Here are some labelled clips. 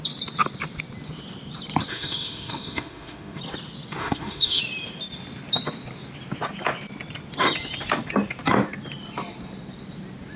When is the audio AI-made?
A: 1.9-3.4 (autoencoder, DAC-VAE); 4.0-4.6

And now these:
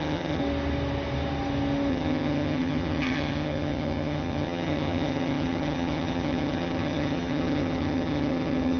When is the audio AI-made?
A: 0.0-0.4 (vocoder, HiFi-GAN); 1.9-8.8

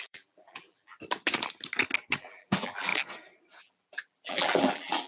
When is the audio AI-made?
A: 0.0-0.9 (vocoder, BigVGAN v2); 2.2-2.9; 3.6-5.1

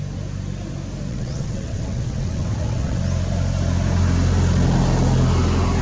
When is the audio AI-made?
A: 1.1-3.0 (vocoder, WaveNeXt)

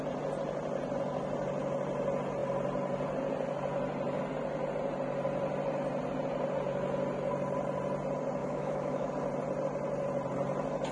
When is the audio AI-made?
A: 8.4-9.1 (autoencoder, DAC-VAE)